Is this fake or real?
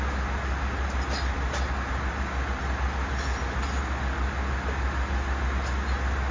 real